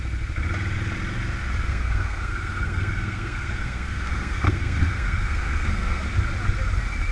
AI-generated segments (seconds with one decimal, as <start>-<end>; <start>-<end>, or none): 1.7-6.0